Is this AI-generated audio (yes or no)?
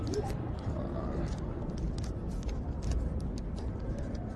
yes